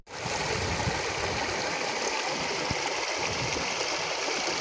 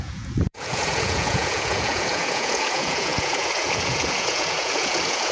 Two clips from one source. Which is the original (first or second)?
first